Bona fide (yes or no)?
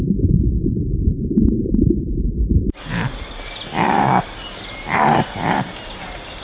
no